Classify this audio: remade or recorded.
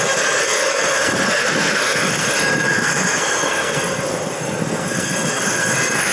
remade